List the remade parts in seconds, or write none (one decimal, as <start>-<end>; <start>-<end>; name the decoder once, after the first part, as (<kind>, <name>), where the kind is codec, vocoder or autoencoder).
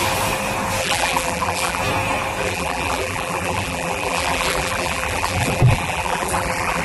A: 0.8-1.8 (vocoder, BigVGAN v2); 2.4-6.8